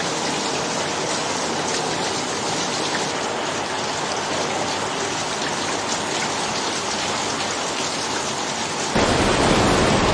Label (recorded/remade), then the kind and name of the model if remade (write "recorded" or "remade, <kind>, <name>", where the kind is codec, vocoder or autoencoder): recorded